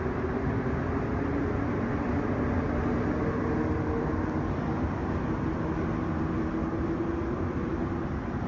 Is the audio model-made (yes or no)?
no